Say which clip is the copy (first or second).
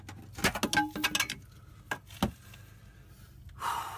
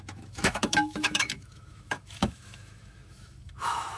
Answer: second